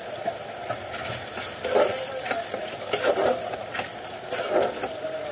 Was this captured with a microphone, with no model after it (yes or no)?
yes